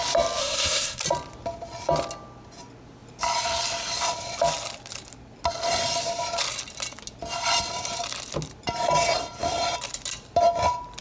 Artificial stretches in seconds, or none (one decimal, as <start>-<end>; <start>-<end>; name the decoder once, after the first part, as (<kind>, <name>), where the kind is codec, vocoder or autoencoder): 0.4-1.0 (codec, SNAC)